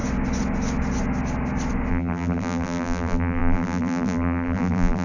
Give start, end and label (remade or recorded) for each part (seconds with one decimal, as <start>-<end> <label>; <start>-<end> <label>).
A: 0.0-1.9 recorded; 1.9-5.0 remade